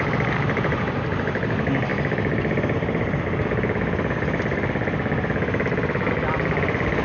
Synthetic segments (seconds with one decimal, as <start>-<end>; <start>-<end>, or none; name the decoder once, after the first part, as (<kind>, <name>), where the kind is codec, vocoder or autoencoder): none